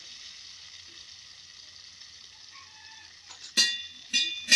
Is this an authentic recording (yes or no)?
yes